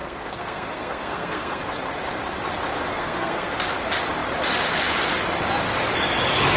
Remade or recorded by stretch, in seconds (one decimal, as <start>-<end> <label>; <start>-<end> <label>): 0.0-1.6 remade; 1.6-2.9 recorded; 2.9-3.5 remade; 3.5-6.6 recorded